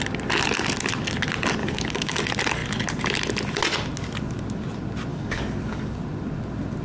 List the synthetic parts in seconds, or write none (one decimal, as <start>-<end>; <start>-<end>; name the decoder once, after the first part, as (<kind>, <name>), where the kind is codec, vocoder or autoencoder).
1.6-2.2 (codec, DAC); 5.1-6.0

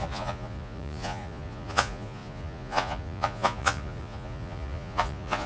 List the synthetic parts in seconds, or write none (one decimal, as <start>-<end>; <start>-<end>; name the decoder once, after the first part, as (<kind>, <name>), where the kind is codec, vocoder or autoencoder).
0.0-5.5 (vocoder, Vocos)